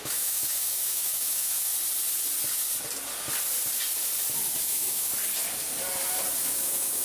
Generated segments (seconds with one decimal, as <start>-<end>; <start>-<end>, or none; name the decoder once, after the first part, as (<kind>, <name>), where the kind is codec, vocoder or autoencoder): 0.0-1.7 (autoencoder, DAC-VAE); 4.6-5.1; 6.4-7.0